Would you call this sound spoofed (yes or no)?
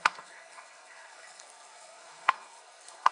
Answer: yes